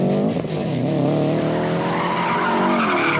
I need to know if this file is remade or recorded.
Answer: recorded